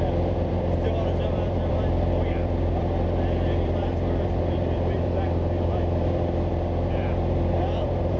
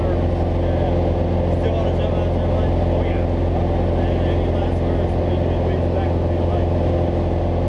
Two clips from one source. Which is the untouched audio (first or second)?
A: second